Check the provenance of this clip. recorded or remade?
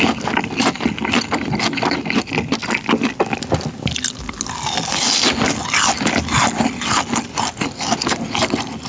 recorded